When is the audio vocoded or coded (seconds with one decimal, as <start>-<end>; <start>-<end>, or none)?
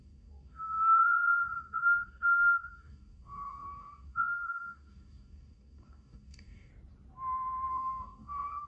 0.0-6.7; 7.7-8.7